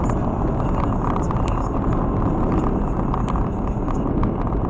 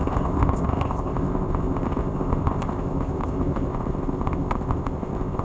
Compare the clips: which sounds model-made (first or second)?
second